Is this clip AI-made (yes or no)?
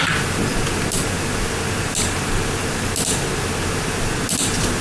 no